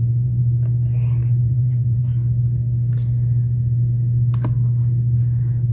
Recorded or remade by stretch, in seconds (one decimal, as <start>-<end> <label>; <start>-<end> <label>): 0.0-0.4 remade; 0.4-1.4 recorded; 1.4-2.1 remade; 2.1-5.7 recorded